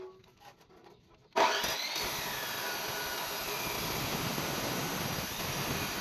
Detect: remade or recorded recorded